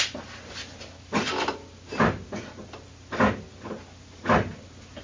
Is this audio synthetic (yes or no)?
no